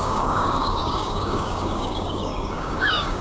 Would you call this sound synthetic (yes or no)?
yes